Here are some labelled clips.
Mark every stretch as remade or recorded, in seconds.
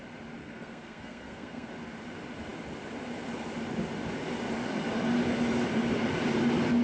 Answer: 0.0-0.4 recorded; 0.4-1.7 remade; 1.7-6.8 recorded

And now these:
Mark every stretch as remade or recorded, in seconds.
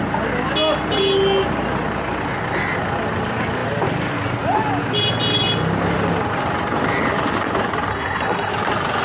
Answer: 0.0-7.9 recorded; 7.9-8.5 remade; 8.5-9.0 recorded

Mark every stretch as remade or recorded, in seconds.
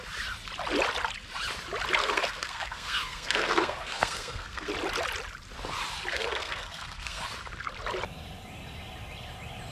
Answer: 0.0-2.0 recorded; 2.0-4.7 remade; 4.7-6.1 recorded; 6.1-7.2 remade; 7.2-9.7 recorded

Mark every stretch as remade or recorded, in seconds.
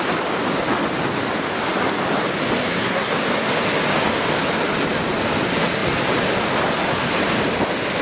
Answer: 0.0-2.6 recorded; 2.6-3.1 remade; 3.1-8.0 recorded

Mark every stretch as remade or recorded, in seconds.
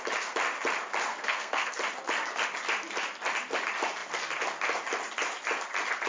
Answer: 0.0-1.1 recorded; 1.1-1.7 remade; 1.7-6.1 recorded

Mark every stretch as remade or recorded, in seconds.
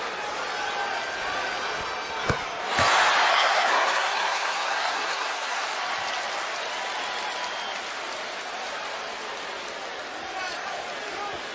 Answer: 0.0-3.3 recorded; 3.3-5.7 remade; 5.7-11.5 recorded